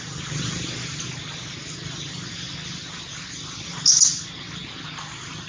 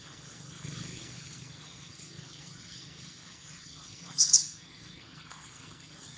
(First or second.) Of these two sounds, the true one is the first